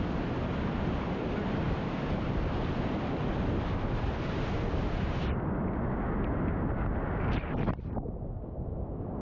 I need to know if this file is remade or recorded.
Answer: recorded